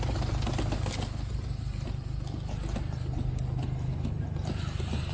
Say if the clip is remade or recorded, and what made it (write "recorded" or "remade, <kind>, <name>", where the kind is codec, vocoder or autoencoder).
recorded